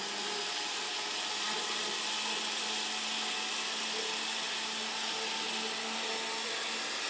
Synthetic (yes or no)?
no